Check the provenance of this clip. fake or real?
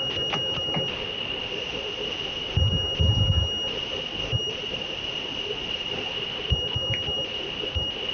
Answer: real